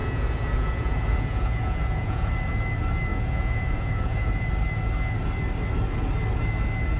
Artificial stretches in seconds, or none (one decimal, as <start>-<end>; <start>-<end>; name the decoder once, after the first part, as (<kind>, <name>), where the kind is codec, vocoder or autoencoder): 0.0-2.3 (vocoder, Vocos); 3.1-4.5